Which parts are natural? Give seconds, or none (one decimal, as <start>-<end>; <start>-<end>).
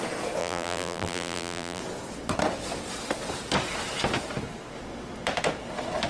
0.0-0.4; 1.8-6.1